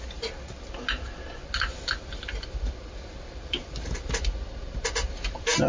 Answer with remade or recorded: recorded